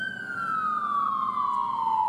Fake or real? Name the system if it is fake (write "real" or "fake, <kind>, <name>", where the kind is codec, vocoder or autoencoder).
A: real